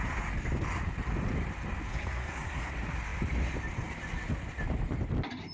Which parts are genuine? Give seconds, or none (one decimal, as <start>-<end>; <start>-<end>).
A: 0.0-1.9; 2.7-5.5